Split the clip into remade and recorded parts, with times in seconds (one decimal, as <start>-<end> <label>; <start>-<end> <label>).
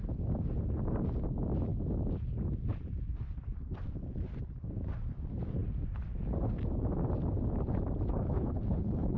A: 0.0-8.1 recorded; 8.1-9.2 remade